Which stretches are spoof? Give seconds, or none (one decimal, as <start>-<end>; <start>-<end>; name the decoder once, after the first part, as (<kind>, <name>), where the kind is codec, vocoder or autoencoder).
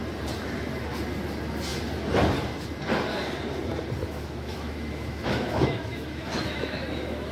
4.0-7.3 (autoencoder, DAC-VAE)